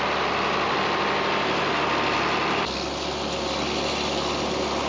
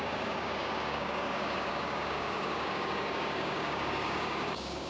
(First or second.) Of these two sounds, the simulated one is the second